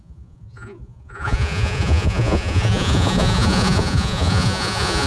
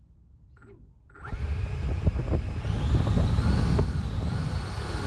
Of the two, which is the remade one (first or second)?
first